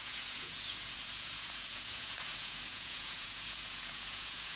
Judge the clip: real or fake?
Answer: fake